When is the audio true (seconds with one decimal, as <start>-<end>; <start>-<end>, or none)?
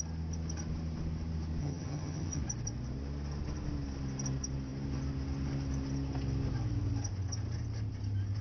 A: 0.0-1.6; 2.4-8.4